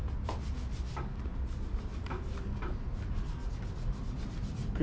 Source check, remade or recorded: recorded